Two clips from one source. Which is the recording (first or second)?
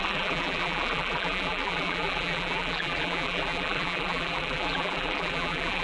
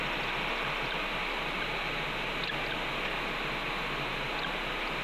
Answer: second